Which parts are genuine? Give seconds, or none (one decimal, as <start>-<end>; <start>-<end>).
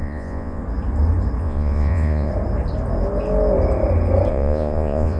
0.6-1.4; 2.3-4.3